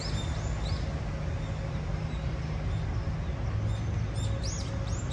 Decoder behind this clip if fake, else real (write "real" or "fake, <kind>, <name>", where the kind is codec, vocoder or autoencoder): real